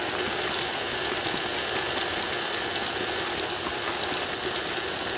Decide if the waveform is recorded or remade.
recorded